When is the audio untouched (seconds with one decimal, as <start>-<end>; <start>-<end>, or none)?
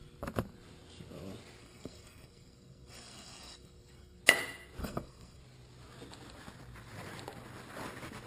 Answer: 0.0-1.6; 4.2-4.8; 5.4-8.3